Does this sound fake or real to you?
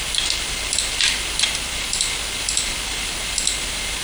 real